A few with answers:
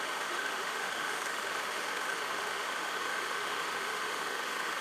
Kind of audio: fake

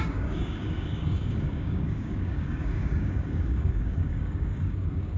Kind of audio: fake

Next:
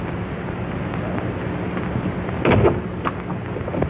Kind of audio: real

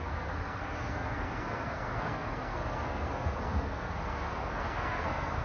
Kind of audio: fake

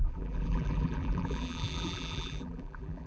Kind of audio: fake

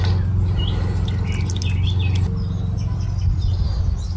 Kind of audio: real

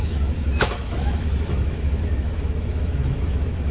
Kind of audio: fake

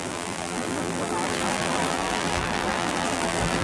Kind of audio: fake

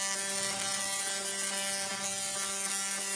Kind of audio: real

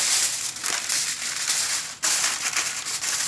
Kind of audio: real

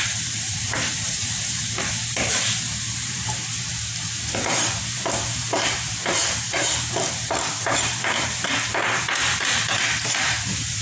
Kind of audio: fake